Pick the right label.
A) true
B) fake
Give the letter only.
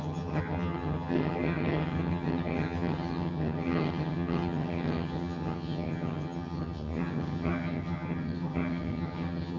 B